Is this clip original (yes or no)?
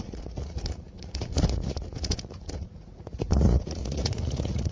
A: no